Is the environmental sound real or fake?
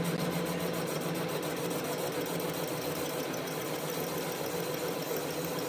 real